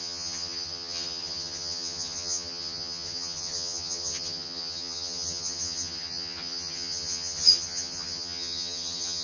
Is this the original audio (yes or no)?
no